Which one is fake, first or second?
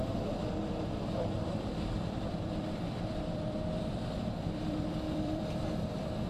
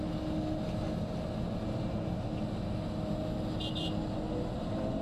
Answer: first